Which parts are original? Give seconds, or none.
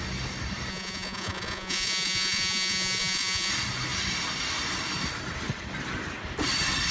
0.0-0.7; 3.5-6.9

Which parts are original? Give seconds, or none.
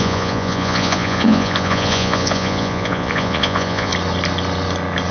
3.9-5.1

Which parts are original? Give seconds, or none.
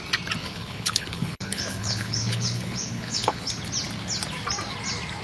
0.0-0.4; 3.5-5.2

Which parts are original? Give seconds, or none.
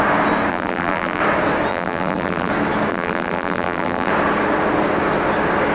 0.0-0.5; 1.2-1.7; 2.5-2.9; 4.1-5.7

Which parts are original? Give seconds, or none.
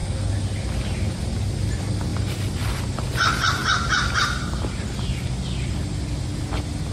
0.0-2.1; 2.8-6.9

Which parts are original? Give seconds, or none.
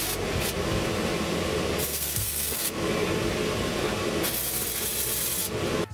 0.0-1.9; 2.8-5.9